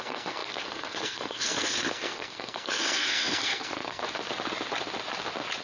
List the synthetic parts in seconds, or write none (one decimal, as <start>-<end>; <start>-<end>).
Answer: 0.0-4.0